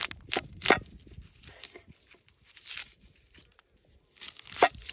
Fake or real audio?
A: real